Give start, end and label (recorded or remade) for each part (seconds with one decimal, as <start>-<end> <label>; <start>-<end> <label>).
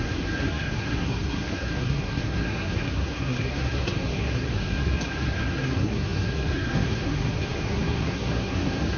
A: 0.0-9.0 remade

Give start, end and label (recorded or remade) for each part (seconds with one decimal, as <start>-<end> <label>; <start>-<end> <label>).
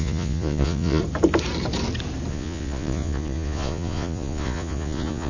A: 0.0-1.0 remade; 1.0-2.3 recorded; 2.3-5.3 remade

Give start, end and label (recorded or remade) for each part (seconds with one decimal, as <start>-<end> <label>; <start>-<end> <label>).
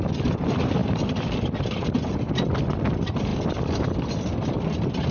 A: 0.0-5.1 recorded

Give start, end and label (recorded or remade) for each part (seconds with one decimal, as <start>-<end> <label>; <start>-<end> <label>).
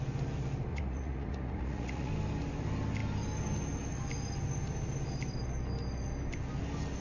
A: 0.0-0.7 recorded; 0.7-2.1 remade; 2.1-7.0 recorded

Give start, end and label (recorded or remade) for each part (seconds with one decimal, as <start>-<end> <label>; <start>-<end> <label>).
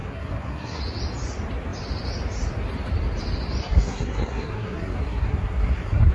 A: 0.0-0.8 remade; 0.8-3.6 recorded; 3.6-6.1 remade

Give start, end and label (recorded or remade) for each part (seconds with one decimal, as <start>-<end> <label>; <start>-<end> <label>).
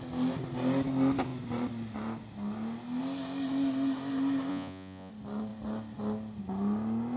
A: 0.0-4.5 recorded; 4.5-5.1 remade; 5.1-7.2 recorded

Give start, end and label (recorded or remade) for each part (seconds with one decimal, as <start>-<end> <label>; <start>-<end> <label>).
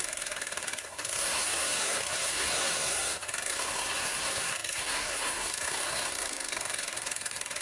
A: 0.0-7.6 remade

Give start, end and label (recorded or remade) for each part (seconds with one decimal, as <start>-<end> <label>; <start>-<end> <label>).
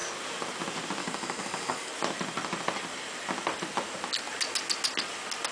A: 0.0-1.0 recorded; 1.0-1.9 remade; 1.9-5.5 recorded